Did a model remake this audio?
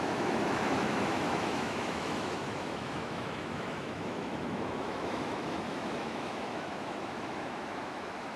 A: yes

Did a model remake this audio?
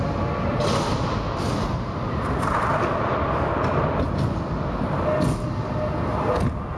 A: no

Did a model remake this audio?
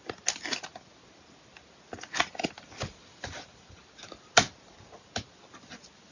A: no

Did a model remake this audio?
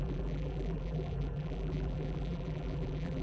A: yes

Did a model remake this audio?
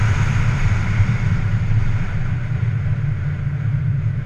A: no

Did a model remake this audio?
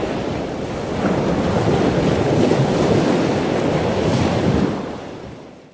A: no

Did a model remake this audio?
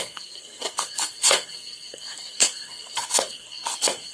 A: yes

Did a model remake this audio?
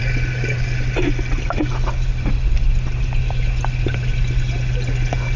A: no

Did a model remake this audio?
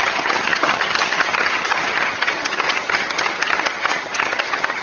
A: yes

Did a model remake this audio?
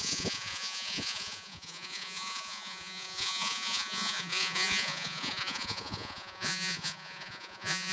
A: yes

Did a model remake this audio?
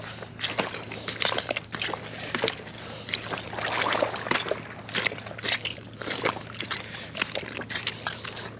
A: no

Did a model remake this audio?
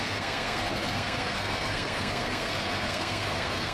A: yes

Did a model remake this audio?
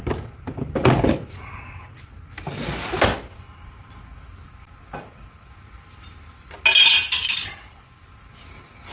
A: no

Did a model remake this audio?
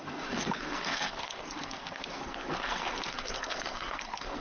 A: yes